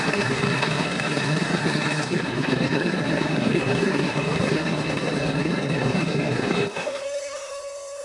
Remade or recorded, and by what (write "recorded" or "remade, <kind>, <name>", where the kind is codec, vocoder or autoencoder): remade, codec, SNAC